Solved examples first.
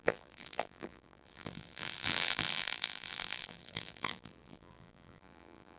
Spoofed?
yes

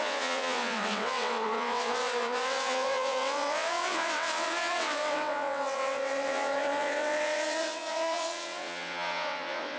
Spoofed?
yes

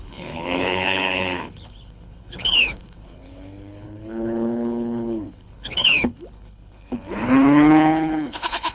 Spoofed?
yes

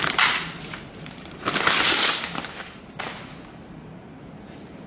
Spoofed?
yes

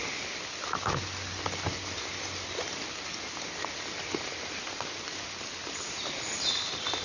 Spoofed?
no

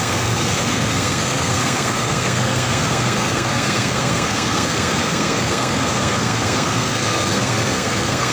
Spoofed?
yes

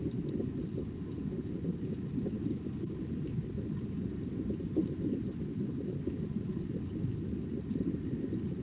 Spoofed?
no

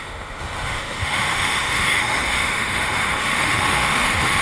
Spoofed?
yes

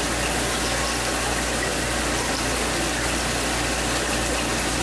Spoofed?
no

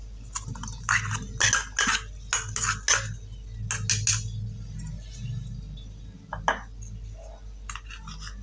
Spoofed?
no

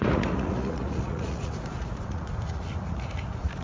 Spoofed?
yes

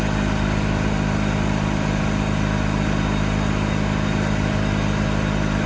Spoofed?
no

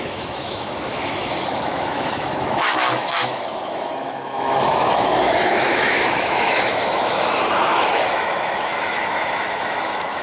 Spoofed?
yes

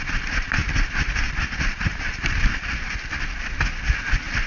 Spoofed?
no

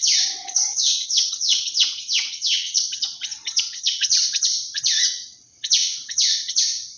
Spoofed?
yes